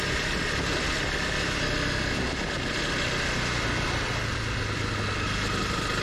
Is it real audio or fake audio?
real